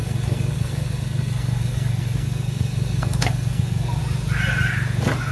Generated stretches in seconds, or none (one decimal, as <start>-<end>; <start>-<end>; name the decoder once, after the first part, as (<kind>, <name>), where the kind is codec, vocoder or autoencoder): 0.0-4.0 (codec, SNAC)